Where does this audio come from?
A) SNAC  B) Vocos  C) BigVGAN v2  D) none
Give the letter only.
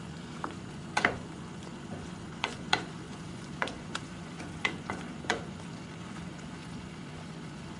B